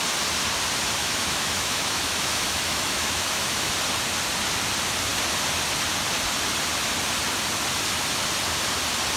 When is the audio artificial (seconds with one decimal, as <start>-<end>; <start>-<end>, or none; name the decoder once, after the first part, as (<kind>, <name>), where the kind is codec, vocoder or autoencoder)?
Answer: 1.0-3.7 (autoencoder, DAC-VAE)